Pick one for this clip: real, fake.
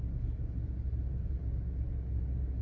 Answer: real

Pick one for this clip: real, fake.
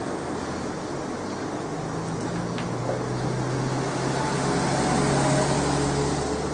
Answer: real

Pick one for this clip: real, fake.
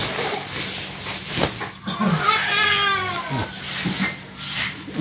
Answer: real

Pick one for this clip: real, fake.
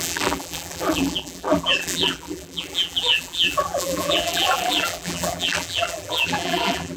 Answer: fake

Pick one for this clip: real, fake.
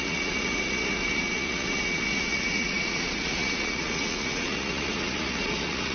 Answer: fake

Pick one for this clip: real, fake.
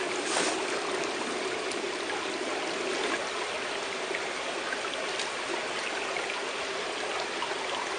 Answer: real